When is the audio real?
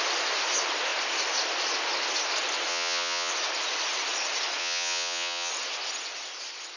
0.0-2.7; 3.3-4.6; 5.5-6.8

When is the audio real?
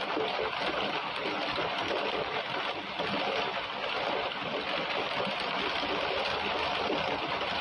0.0-7.6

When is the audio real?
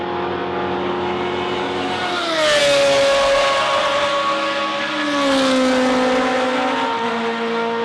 0.0-7.8